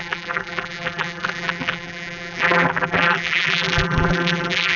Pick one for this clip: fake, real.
fake